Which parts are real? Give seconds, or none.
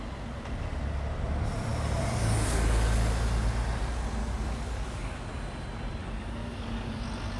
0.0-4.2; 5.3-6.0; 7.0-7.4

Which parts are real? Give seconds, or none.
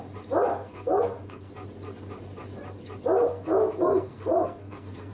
0.0-0.5; 1.5-3.3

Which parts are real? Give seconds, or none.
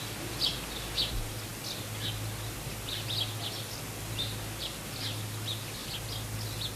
1.5-4.6; 5.8-6.8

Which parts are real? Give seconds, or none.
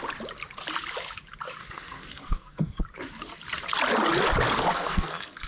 0.0-1.6; 2.8-4.7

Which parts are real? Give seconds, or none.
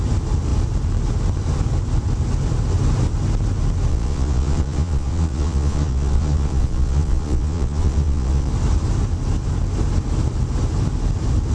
0.0-3.9; 8.5-11.5